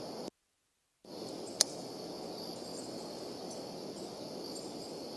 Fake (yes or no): no